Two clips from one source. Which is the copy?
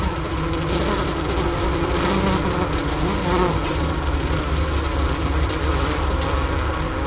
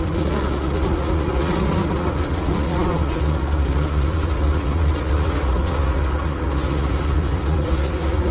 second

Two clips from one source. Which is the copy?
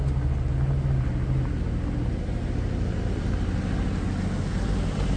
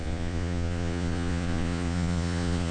second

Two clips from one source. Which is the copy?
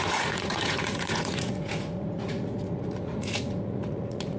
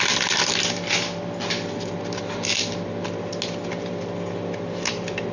first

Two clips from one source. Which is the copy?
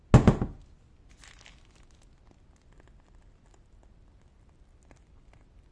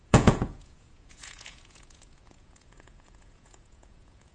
second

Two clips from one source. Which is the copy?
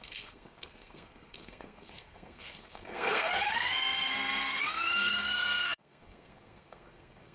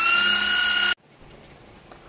first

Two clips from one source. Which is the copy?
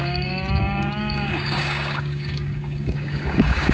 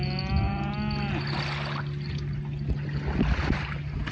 first